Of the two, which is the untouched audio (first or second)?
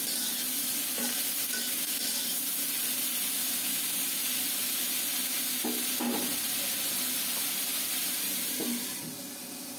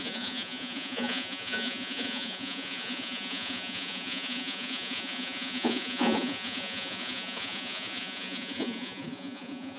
first